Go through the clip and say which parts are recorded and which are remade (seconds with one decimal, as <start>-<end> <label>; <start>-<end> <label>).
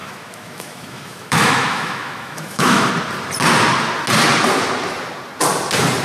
0.0-2.9 remade; 2.9-6.0 recorded